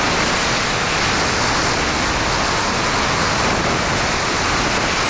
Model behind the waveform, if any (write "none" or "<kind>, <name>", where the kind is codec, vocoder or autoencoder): none